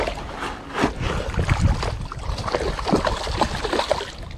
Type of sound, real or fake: real